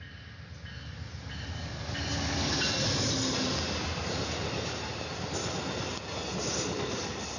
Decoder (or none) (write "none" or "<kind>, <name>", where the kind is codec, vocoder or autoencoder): none